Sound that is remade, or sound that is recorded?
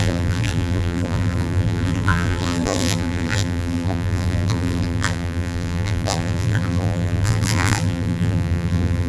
remade